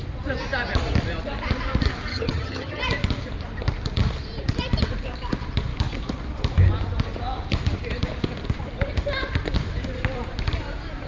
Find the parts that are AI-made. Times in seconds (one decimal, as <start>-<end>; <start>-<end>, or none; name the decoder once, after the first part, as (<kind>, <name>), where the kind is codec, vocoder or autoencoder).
2.1-2.8 (vocoder, HiFi-GAN)